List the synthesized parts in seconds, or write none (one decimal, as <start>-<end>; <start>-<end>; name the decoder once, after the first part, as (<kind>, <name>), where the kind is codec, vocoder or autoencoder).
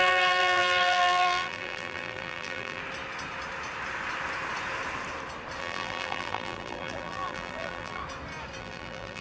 0.0-2.8 (vocoder, BigVGAN v2); 5.6-8.0; 8.6-9.2